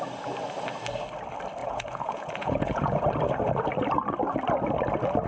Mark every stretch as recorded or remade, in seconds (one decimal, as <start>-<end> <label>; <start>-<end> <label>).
0.0-1.6 recorded; 1.6-3.1 remade; 3.1-5.3 recorded